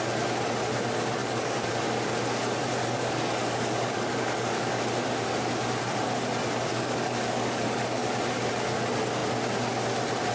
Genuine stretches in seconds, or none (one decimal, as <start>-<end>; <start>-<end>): 0.0-1.2; 1.7-2.8; 4.8-6.7; 8.2-10.3